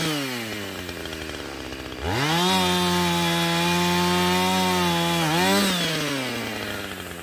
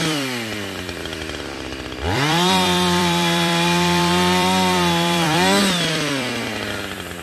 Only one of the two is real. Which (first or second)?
first